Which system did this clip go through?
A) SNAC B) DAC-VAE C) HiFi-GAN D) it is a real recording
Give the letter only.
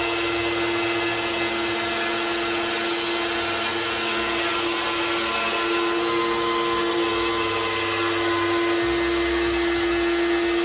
D